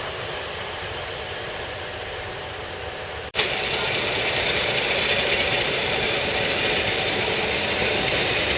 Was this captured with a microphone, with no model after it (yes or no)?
no